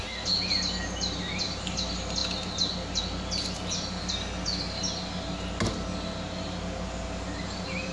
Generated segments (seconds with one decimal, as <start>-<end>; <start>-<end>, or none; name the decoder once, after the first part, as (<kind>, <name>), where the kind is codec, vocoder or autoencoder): none